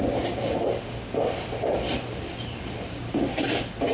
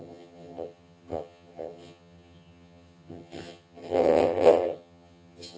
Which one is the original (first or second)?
first